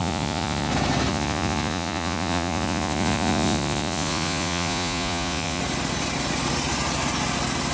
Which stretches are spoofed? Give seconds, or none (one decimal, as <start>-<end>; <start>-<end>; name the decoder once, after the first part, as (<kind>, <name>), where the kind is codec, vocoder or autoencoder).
0.0-0.7 (vocoder, Vocos); 1.1-5.6